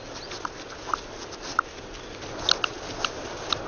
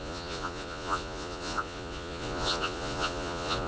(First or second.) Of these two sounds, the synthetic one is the second